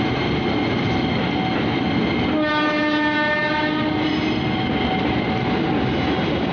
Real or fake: real